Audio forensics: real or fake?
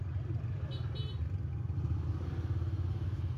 real